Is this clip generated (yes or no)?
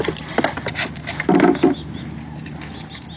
no